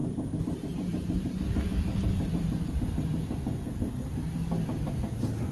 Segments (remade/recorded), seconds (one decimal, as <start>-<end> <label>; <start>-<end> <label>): 0.0-2.7 remade; 2.7-5.5 recorded